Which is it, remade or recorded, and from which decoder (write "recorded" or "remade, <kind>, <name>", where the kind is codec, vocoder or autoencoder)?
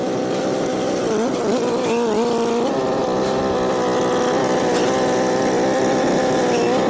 recorded